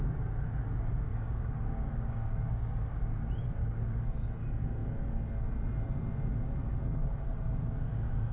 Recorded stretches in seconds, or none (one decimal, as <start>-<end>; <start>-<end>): 0.0-1.1; 3.0-3.6; 4.3-8.3